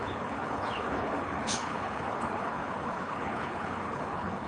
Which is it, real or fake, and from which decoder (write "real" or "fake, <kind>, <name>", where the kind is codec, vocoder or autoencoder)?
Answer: fake, codec, HILCodec